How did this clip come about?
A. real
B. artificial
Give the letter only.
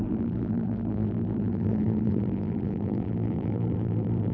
B